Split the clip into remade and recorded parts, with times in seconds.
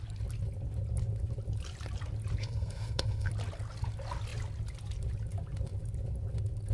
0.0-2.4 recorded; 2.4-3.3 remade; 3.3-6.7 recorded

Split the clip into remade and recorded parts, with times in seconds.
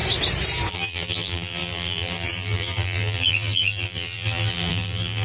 0.0-0.7 recorded; 0.7-5.2 remade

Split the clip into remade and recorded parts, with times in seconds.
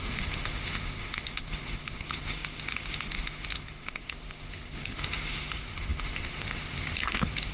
0.0-7.5 remade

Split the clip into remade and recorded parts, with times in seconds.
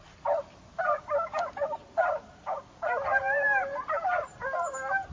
0.0-5.1 recorded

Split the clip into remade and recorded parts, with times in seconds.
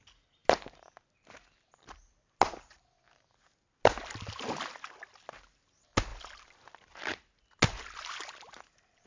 0.0-9.1 recorded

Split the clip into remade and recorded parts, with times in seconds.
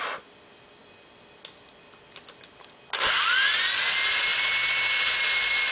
0.0-5.7 recorded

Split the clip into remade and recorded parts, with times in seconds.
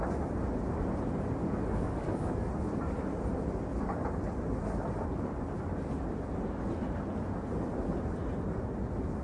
0.0-1.4 recorded; 1.4-2.5 remade; 2.5-9.2 recorded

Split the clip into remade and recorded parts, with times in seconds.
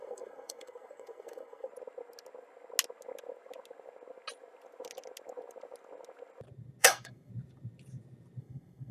0.0-1.7 remade; 1.7-6.8 recorded; 6.8-7.3 remade; 7.3-8.4 recorded; 8.4-8.9 remade